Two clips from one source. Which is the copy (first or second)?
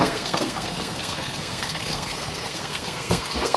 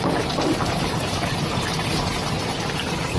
first